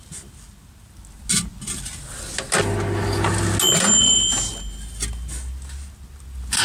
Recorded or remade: recorded